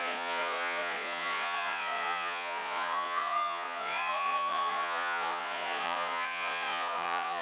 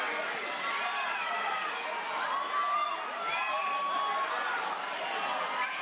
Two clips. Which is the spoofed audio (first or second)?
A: first